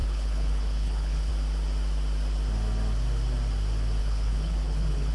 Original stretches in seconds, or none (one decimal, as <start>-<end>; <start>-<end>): 1.3-4.0